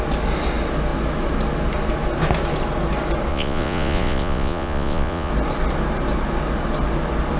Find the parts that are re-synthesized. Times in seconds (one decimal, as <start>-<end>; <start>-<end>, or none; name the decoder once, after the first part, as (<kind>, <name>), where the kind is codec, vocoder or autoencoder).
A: 3.3-5.3 (vocoder, Vocos)

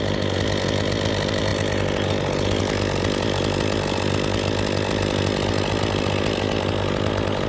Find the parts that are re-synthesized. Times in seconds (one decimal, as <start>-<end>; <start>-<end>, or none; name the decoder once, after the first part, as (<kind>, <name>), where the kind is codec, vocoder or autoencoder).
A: none

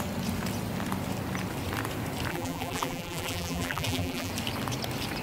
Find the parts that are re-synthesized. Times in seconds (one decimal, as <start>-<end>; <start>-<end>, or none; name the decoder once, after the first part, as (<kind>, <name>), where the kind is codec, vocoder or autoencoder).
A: 2.3-4.3 (vocoder, BigVGAN v2)